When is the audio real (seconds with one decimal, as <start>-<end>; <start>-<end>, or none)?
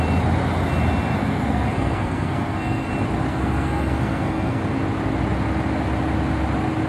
0.0-1.2; 2.9-3.3; 4.6-6.9